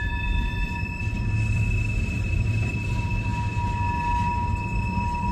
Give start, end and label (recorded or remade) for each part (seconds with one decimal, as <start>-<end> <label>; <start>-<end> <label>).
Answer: 0.0-3.3 remade; 3.3-4.6 recorded; 4.6-5.3 remade